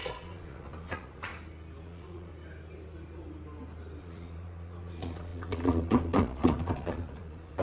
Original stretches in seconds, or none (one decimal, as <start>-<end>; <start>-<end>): 1.3-1.8; 2.3-4.0